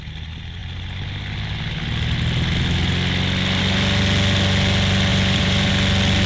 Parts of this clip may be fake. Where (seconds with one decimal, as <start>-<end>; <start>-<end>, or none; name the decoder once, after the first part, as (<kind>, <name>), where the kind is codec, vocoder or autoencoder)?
5.1-5.7 (vocoder, BigVGAN v2)